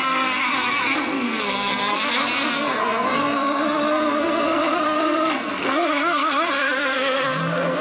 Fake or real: fake